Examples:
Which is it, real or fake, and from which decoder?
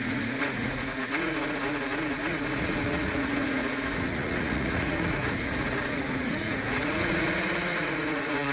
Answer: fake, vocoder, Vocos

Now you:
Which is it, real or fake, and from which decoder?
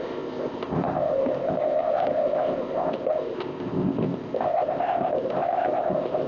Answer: fake, codec, ZipCodec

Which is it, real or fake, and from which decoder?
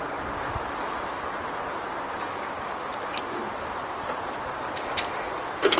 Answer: real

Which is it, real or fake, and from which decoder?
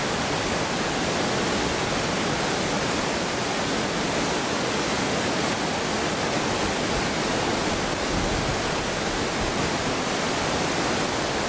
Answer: real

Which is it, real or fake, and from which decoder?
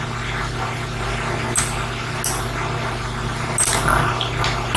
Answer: real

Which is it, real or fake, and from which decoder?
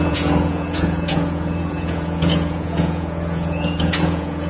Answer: fake, vocoder, Vocos